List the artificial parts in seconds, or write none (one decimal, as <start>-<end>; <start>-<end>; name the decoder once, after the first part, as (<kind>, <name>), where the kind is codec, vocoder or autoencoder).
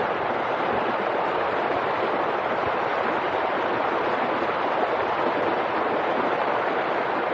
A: none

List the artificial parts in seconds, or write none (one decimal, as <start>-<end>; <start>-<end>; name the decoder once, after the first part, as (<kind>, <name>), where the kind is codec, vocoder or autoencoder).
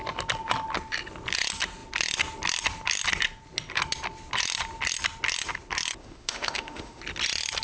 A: 6.0-7.0 (autoencoder, DAC-VAE)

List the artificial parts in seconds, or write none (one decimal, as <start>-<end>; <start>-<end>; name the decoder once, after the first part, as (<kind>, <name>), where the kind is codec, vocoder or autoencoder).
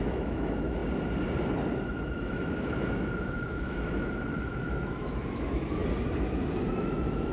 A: 0.0-0.8 (autoencoder, DAC-VAE); 1.8-5.8; 6.7-7.3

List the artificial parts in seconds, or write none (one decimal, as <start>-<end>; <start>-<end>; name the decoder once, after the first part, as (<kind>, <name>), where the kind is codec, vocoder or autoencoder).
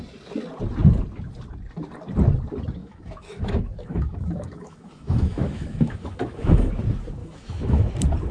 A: 2.8-6.7 (autoencoder, DAC-VAE); 7.2-7.9